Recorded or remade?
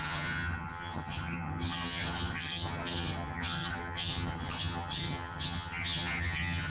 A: remade